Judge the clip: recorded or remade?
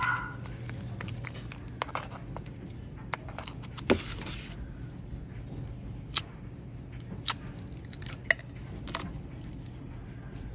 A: recorded